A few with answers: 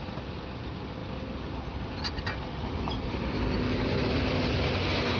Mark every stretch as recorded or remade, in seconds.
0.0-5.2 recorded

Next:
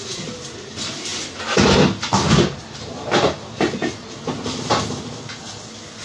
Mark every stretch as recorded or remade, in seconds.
0.0-6.0 recorded

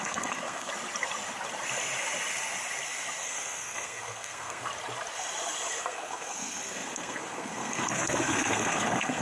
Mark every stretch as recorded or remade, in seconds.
0.0-0.7 remade; 0.7-3.2 recorded; 3.2-4.7 remade; 4.7-5.8 recorded; 5.8-9.2 remade

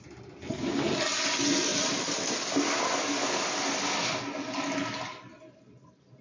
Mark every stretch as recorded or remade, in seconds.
0.0-6.2 recorded